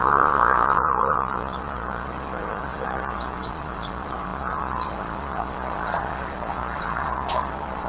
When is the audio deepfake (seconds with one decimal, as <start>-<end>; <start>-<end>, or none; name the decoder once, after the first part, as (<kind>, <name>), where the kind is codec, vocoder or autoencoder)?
0.0-7.9 (vocoder, Vocos)